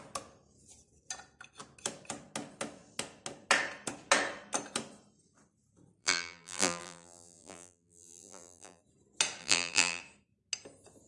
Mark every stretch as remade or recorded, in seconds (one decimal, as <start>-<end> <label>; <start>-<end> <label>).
0.0-6.0 recorded; 6.0-8.8 remade; 8.8-9.4 recorded; 9.4-10.0 remade; 10.0-11.1 recorded